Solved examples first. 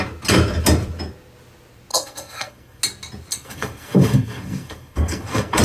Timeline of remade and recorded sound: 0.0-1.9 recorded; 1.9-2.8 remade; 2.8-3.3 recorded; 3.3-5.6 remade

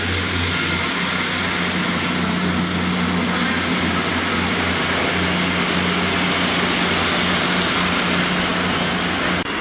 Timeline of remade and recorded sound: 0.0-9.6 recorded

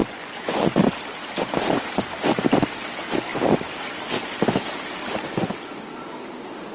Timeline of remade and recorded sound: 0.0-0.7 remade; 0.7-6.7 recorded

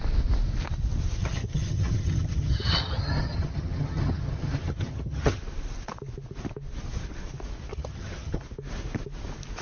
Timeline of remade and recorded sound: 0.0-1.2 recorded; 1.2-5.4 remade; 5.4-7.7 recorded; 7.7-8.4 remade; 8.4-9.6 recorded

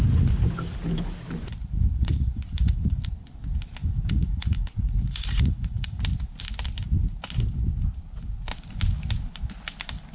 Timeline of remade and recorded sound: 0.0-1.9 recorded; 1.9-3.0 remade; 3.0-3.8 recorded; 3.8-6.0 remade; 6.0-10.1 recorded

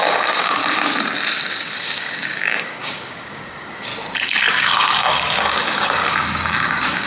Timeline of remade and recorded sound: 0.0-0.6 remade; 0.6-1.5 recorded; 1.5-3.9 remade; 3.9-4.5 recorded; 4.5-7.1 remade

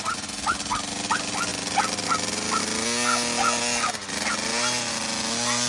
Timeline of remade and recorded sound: 0.0-5.7 recorded